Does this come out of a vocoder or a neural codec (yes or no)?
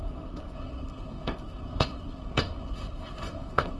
yes